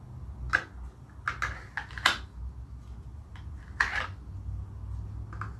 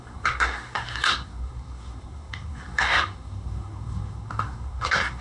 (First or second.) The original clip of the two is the first